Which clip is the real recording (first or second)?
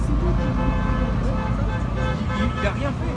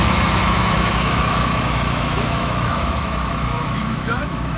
first